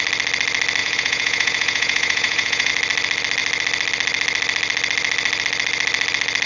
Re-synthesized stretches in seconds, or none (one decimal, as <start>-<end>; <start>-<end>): 0.8-2.7